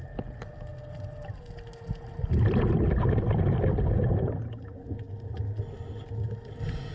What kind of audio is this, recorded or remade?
recorded